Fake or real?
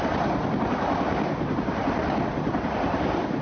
real